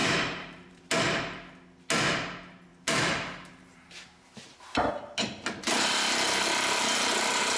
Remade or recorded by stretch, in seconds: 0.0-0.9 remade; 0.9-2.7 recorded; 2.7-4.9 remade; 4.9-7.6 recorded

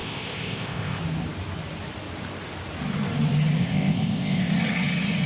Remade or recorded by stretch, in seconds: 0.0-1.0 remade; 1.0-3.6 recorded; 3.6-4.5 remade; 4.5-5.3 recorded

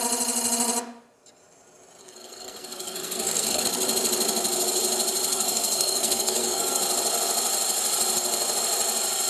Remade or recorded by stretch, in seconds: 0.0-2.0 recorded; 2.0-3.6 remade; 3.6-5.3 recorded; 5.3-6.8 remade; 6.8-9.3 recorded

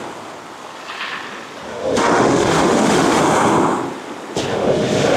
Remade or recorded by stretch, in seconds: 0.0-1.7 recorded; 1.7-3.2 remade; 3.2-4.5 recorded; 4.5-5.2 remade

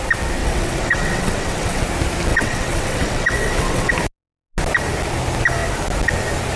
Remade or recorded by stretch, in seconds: 0.0-0.4 recorded; 0.4-1.8 remade; 1.8-2.3 recorded; 2.3-3.9 remade; 3.9-6.6 recorded

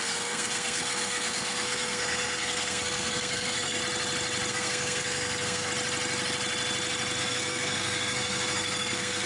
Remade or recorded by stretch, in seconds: 0.0-3.8 remade; 3.8-4.5 recorded; 4.5-5.7 remade; 5.7-7.2 recorded; 7.2-9.3 remade

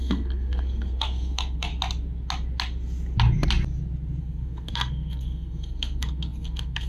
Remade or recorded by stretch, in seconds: 0.0-1.7 remade; 1.7-4.2 recorded; 4.2-6.9 remade

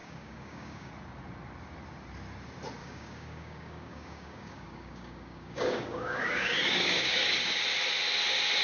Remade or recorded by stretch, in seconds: 0.0-0.9 remade; 0.9-2.8 recorded; 2.8-7.6 remade; 7.6-8.6 recorded